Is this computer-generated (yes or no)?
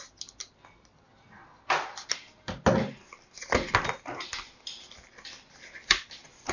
no